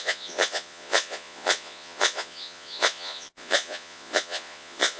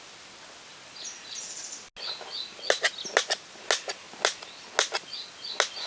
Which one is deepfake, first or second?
first